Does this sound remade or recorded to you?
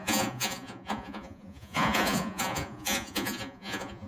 remade